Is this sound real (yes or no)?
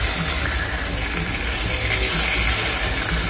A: yes